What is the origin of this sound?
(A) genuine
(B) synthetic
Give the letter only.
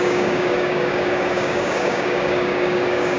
B